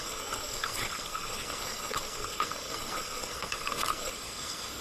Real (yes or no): no